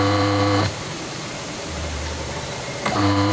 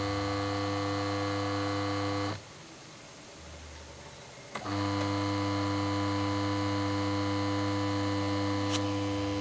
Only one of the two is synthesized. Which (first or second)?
first